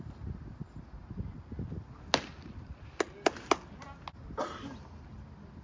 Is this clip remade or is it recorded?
recorded